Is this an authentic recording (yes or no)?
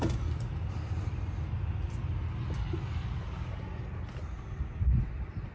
yes